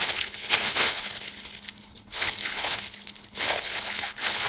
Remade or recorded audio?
remade